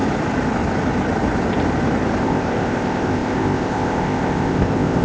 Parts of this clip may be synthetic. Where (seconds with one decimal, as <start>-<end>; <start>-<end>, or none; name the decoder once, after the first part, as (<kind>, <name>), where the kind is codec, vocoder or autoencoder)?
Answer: 2.2-5.0 (codec, ZipCodec)